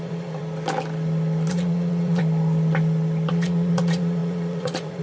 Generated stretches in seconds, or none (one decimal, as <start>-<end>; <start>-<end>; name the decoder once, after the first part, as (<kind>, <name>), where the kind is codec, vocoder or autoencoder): 0.0-0.4 (vocoder, Vocos); 1.5-2.2; 3.3-5.0